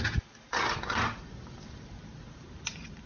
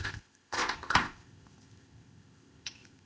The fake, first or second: second